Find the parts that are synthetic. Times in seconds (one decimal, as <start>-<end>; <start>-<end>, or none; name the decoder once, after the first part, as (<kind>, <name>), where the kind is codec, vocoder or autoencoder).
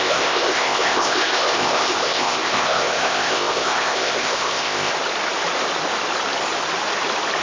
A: 0.0-4.9 (codec, ZipCodec)